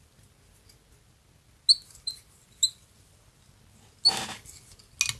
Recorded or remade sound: recorded